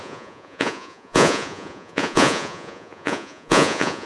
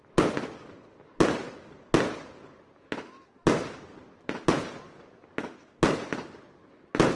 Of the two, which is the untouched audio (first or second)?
second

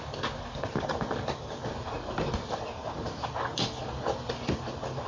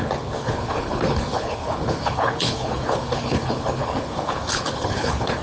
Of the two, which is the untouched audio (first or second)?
first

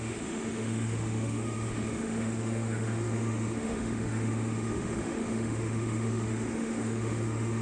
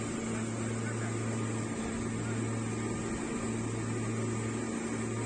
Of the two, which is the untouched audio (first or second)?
second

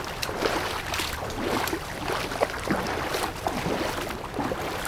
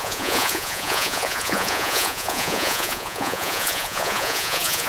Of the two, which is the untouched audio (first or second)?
first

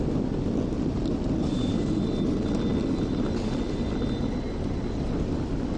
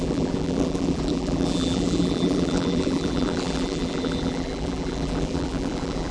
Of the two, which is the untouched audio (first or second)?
first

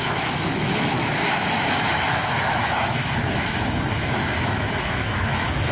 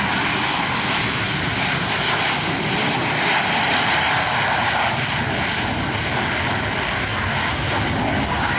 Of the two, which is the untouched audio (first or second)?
second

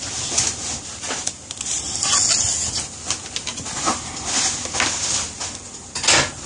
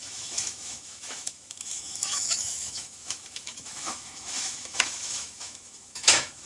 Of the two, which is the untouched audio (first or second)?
first